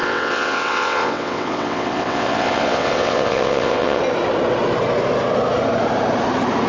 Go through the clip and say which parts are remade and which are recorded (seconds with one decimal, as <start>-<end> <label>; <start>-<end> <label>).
0.0-4.0 remade; 4.0-6.7 recorded